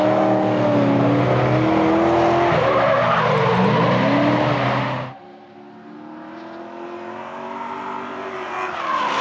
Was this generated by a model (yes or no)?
no